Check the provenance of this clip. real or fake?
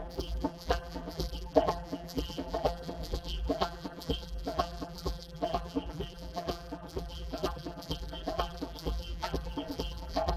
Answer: fake